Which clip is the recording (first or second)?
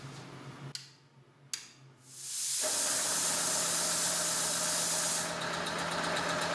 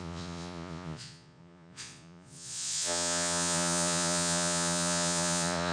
first